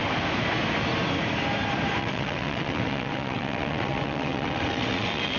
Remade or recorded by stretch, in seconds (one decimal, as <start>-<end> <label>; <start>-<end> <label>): 0.0-2.0 recorded; 2.0-5.4 remade